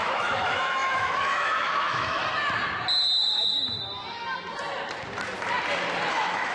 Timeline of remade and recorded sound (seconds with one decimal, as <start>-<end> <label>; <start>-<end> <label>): 0.0-2.2 remade; 2.2-6.1 recorded; 6.1-6.5 remade